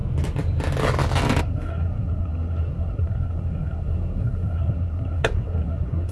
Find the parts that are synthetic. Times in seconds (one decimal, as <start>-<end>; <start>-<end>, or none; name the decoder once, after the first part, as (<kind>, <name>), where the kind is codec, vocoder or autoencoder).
1.4-6.1 (codec, SNAC)